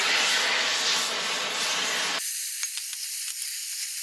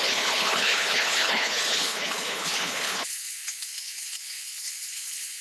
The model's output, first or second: second